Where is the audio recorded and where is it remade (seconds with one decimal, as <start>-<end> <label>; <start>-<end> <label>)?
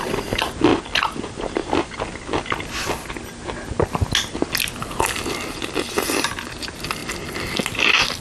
0.0-8.2 recorded